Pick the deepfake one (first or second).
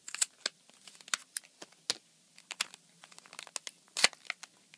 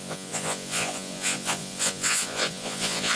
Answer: second